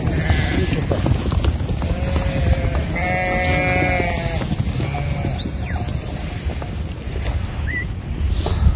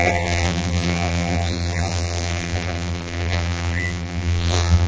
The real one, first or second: first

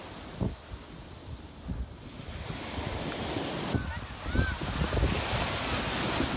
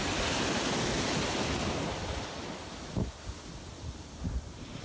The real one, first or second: first